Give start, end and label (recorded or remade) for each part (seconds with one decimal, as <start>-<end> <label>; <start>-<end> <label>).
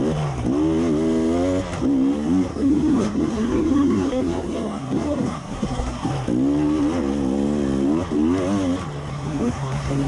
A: 0.0-2.5 recorded; 2.5-6.1 remade; 6.1-9.1 recorded; 9.1-10.1 remade